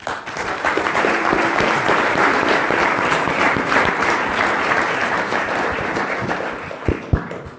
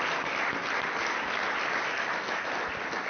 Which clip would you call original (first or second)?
second